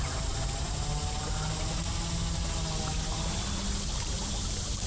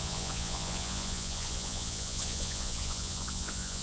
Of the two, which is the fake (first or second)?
second